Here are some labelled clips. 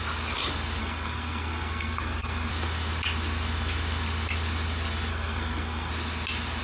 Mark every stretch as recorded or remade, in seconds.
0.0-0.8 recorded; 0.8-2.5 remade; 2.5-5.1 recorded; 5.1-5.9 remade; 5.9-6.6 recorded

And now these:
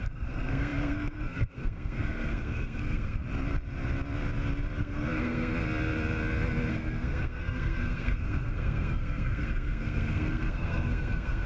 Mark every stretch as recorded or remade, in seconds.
0.0-3.2 remade; 3.2-4.8 recorded; 4.8-5.5 remade; 5.5-6.7 recorded; 6.7-11.5 remade

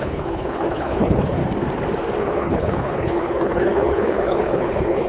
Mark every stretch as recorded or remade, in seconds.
0.0-1.4 remade; 1.4-2.2 recorded; 2.2-5.1 remade